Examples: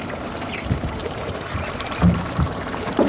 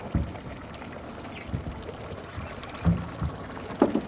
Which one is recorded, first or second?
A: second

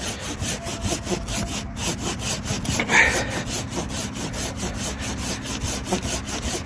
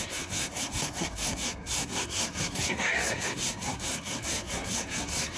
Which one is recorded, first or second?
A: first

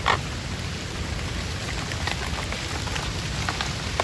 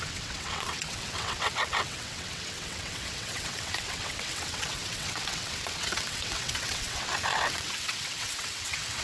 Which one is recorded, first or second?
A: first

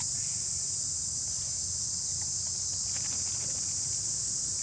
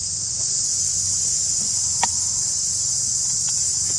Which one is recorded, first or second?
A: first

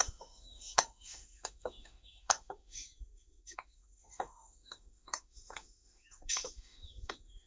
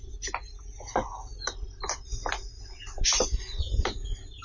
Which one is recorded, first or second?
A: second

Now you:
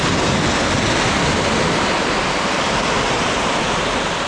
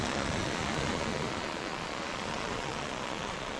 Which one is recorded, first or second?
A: first